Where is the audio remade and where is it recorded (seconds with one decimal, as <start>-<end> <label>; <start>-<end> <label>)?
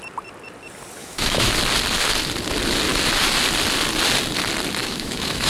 0.0-1.0 recorded; 1.0-1.5 remade; 1.5-4.8 recorded; 4.8-5.5 remade